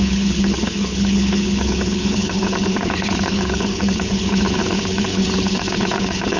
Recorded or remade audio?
remade